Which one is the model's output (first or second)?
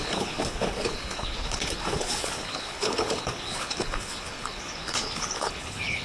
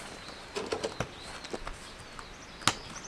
first